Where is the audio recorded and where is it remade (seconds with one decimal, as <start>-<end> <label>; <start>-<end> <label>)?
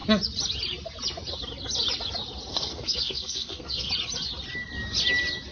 0.0-2.5 recorded; 2.5-3.9 remade; 3.9-5.5 recorded